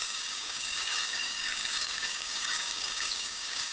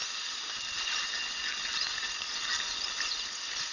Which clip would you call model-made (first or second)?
first